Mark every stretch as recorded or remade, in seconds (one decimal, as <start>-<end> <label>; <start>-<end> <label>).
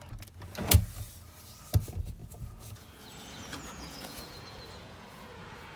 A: 0.0-2.2 recorded; 2.2-5.8 remade